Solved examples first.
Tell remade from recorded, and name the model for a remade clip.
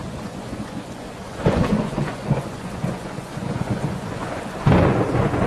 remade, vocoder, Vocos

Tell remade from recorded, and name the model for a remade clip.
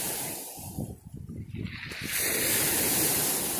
recorded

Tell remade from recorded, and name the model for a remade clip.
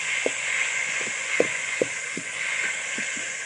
remade, vocoder, Vocos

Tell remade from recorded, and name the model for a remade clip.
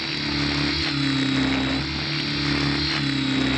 recorded